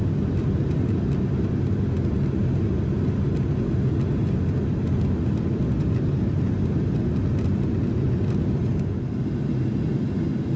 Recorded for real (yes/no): yes